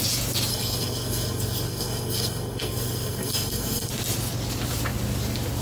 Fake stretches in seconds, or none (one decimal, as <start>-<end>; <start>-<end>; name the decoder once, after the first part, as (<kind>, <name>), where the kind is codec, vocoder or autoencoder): 0.5-3.9 (codec, SNAC)